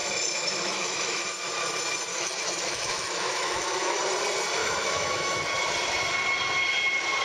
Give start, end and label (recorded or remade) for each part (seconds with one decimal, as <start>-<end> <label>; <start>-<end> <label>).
0.0-1.2 remade; 1.2-2.1 recorded; 2.1-4.0 remade; 4.0-4.6 recorded; 4.6-5.4 remade; 5.4-7.2 recorded